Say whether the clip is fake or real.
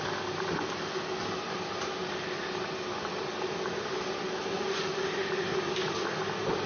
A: real